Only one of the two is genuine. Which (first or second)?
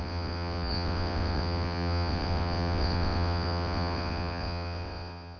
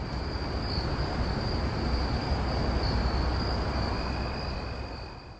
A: second